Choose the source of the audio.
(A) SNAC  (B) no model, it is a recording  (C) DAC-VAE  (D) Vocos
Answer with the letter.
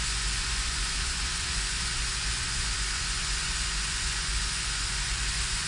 D